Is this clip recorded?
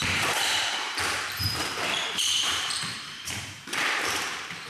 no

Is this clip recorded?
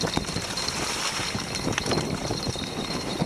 no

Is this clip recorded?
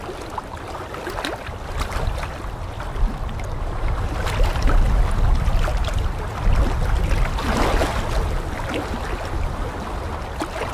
yes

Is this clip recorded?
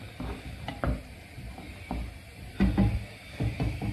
yes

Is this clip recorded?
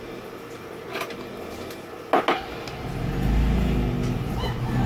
yes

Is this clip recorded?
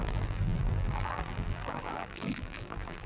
no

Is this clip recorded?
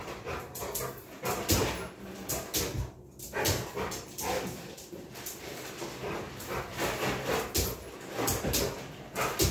yes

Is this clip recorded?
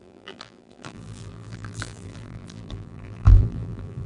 no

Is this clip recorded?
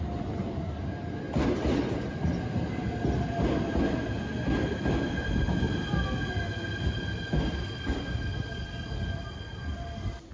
yes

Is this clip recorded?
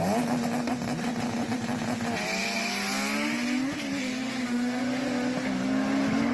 yes